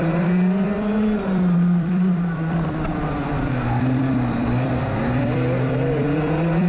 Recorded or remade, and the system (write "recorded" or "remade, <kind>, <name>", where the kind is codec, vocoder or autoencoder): remade, vocoder, BigVGAN v2